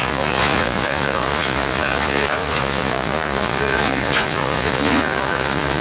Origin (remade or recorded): remade